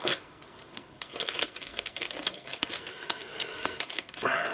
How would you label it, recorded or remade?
remade